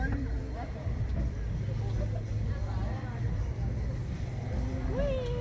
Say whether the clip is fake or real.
real